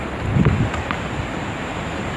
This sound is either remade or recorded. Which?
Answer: remade